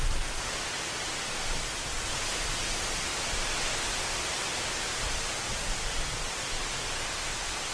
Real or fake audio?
real